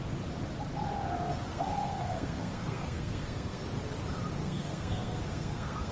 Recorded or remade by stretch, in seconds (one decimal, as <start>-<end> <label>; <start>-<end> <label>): 0.0-1.5 recorded; 1.5-3.6 remade; 3.6-4.4 recorded; 4.4-5.9 remade